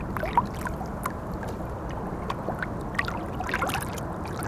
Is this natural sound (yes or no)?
yes